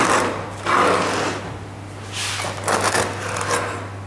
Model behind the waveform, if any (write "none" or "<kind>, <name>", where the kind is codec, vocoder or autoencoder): none